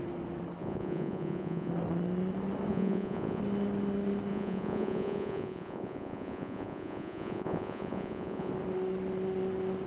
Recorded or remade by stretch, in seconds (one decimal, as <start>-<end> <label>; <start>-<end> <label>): 0.0-0.6 recorded; 0.6-1.7 remade; 1.7-2.7 recorded; 2.7-3.4 remade; 3.4-4.3 recorded; 4.3-8.5 remade; 8.5-9.9 recorded

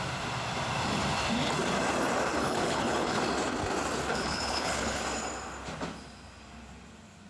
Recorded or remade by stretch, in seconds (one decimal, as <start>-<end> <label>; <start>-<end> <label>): 0.0-2.3 recorded; 2.3-3.2 remade; 3.2-4.1 recorded; 4.1-5.0 remade; 5.0-7.3 recorded

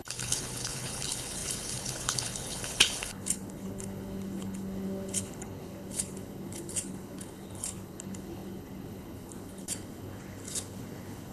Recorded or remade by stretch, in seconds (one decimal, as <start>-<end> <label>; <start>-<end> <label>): 0.0-11.3 remade

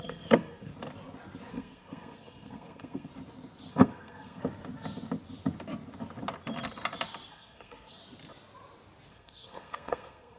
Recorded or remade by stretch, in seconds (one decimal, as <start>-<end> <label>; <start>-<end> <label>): 0.0-0.7 remade; 0.7-1.5 recorded; 1.5-3.1 remade; 3.1-3.7 recorded; 3.7-4.4 remade; 4.4-7.3 recorded; 7.3-8.0 remade; 8.0-9.1 recorded; 9.1-10.4 remade

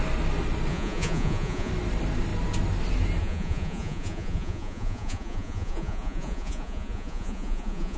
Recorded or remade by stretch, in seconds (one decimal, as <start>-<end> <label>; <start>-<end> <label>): 0.0-0.7 recorded; 0.7-1.7 remade; 1.7-3.2 recorded; 3.2-8.0 remade

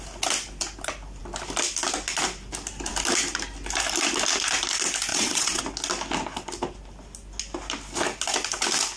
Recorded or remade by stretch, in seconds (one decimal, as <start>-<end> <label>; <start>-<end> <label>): 0.0-5.1 recorded; 5.1-5.6 remade; 5.6-9.0 recorded

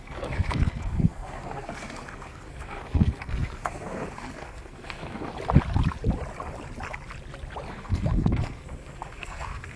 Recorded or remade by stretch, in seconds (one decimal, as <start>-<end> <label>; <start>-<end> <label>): 0.0-5.3 remade; 5.3-7.7 recorded; 7.7-9.8 remade